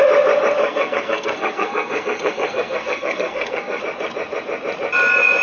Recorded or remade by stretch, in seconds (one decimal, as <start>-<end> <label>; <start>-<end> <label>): 0.0-0.6 recorded; 0.6-3.8 remade; 3.8-5.4 recorded